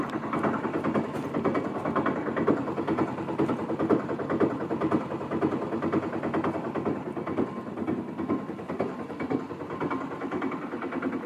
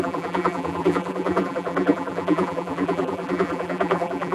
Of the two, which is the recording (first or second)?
first